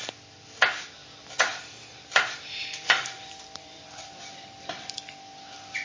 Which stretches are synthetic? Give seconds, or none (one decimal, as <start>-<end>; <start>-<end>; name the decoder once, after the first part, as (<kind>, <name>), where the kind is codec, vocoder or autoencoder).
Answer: 1.5-4.2 (vocoder, BigVGAN v2)